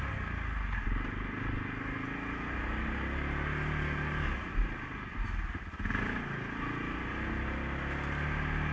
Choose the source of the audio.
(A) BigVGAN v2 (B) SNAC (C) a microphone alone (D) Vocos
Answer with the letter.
C